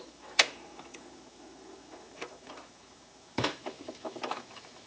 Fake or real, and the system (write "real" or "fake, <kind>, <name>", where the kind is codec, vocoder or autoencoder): fake, autoencoder, DAC-VAE